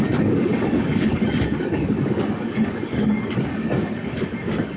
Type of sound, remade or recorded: remade